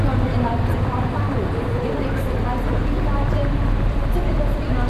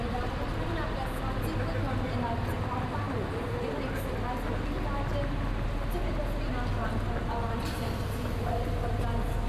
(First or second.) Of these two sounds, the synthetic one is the first